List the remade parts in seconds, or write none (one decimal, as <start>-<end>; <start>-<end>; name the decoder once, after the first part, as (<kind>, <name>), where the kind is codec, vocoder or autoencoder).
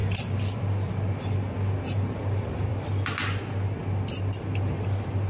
none